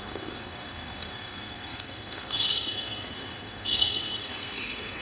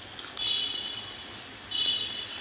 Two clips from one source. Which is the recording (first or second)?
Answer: second